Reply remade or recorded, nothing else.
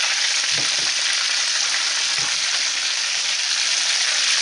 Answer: recorded